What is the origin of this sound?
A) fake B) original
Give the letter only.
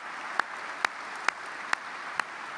B